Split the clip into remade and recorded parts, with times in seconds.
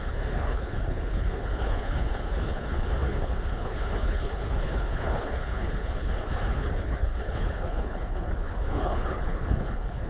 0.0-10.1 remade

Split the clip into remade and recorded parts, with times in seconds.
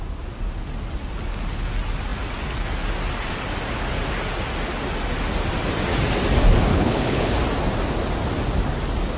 0.0-6.7 recorded; 6.7-7.3 remade; 7.3-9.2 recorded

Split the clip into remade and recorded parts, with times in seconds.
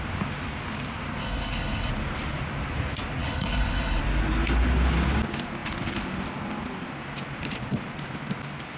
0.0-1.2 recorded; 1.2-1.9 remade; 1.9-3.2 recorded; 3.2-4.0 remade; 4.0-8.8 recorded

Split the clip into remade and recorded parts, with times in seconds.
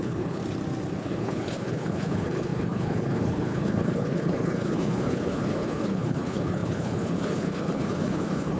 0.0-0.4 remade; 0.4-1.0 recorded; 1.0-8.6 remade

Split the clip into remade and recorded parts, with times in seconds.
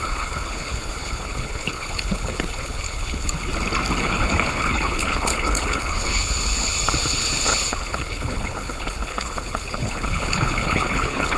0.0-3.5 remade; 3.5-4.0 recorded; 4.0-11.4 remade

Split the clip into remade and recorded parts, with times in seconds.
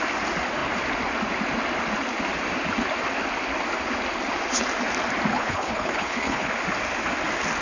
0.0-5.3 recorded; 5.3-6.5 remade; 6.5-7.6 recorded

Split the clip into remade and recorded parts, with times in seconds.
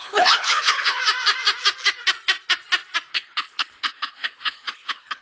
0.0-1.0 remade; 1.0-3.1 recorded; 3.1-5.2 remade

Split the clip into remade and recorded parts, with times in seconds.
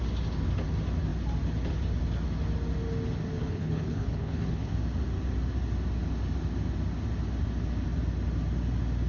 0.0-3.4 recorded; 3.4-4.7 remade; 4.7-9.1 recorded